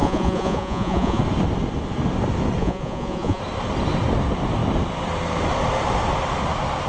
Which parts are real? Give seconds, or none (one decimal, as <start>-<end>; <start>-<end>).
1.2-2.6; 3.4-6.9